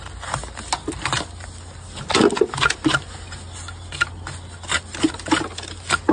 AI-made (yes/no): no